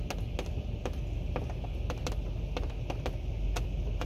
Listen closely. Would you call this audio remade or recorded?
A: recorded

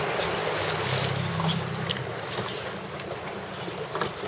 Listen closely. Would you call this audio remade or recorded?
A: recorded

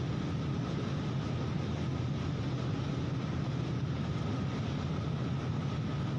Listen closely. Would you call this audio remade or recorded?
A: recorded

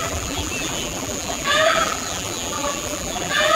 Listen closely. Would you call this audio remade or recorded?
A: remade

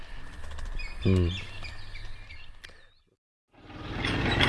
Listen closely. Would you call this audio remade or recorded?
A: recorded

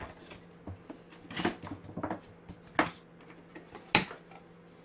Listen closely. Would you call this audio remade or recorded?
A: recorded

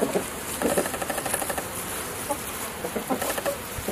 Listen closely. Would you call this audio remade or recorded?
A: recorded